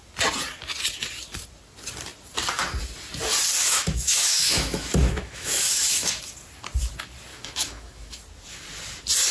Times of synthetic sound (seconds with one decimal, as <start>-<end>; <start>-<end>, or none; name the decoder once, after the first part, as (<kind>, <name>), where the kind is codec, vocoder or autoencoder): 3.6-6.2 (autoencoder, DAC-VAE); 7.3-8.2